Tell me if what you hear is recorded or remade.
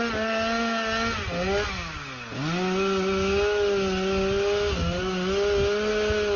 recorded